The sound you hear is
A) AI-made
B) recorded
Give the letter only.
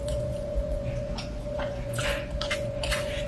A